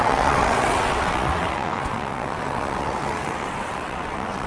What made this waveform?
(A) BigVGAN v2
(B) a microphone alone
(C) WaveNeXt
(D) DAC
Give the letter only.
C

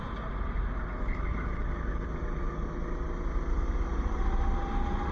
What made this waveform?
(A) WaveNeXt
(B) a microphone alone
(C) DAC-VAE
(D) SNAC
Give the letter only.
B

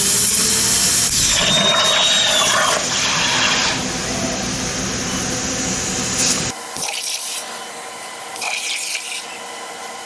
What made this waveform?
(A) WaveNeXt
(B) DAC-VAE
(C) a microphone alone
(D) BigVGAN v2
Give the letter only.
C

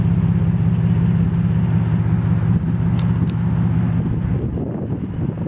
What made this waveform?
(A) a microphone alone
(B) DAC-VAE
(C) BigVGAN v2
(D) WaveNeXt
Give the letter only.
A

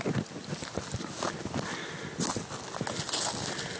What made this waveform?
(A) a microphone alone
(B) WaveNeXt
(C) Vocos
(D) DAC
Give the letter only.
A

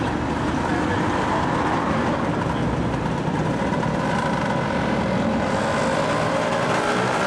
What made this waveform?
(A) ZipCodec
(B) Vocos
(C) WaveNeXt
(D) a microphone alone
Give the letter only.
D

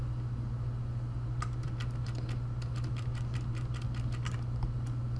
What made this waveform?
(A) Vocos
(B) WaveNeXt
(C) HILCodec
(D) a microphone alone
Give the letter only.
D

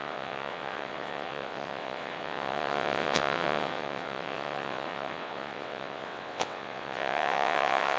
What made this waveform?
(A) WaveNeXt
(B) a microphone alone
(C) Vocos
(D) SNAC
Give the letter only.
A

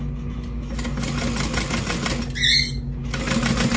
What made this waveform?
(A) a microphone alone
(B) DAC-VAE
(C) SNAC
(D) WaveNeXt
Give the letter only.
A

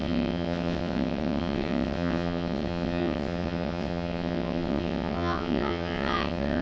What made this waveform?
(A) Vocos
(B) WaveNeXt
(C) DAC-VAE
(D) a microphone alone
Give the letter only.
B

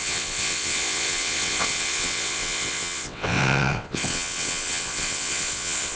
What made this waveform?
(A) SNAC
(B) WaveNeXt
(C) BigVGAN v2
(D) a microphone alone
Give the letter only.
B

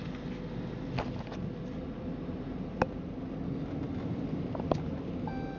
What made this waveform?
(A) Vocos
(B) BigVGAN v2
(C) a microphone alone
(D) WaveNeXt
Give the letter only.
C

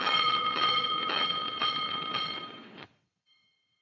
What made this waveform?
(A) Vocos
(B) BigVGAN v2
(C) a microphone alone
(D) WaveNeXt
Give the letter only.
D